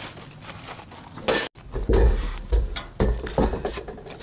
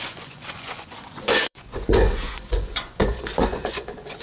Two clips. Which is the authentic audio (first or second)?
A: first